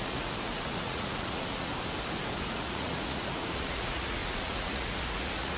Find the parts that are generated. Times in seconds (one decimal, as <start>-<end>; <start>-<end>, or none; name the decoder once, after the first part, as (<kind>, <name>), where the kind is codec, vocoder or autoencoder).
0.0-1.7 (vocoder, Vocos); 2.5-5.6

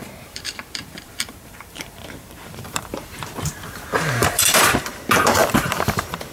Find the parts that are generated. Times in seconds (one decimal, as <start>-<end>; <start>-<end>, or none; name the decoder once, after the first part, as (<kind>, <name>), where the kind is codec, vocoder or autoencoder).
0.0-6.3 (vocoder, BigVGAN v2)